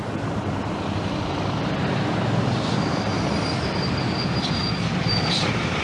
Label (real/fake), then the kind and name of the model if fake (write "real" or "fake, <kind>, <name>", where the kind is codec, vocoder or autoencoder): real